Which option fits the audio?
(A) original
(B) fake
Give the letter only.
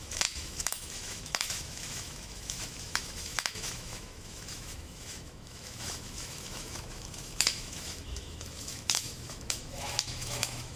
B